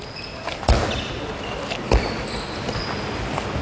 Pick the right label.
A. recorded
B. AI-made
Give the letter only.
A